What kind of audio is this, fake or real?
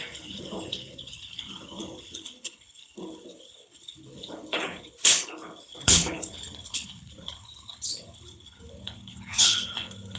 fake